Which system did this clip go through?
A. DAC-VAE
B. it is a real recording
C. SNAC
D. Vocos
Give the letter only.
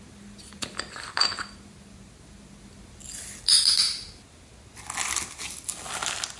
B